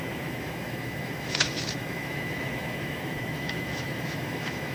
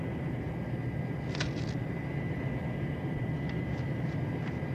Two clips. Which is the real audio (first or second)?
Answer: second